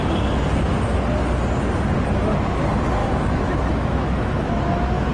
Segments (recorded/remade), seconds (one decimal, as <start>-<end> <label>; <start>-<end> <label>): 0.0-3.0 recorded; 3.0-4.5 remade; 4.5-5.1 recorded